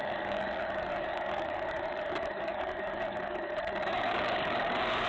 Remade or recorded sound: remade